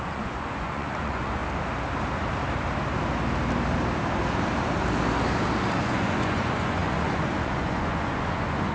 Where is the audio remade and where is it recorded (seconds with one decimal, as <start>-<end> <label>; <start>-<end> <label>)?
0.0-1.4 remade; 1.4-5.8 recorded; 5.8-8.7 remade